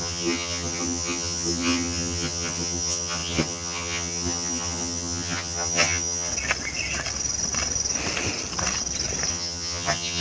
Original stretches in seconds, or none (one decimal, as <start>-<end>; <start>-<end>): 6.3-9.3